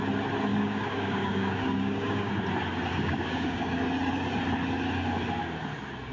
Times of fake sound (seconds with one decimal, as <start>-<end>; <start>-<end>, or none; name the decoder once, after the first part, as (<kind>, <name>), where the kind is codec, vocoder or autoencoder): 0.5-2.4 (codec, DAC); 2.9-3.7